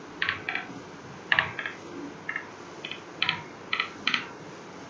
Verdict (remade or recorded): recorded